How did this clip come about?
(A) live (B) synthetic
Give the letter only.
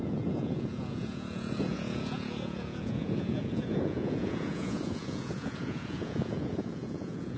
B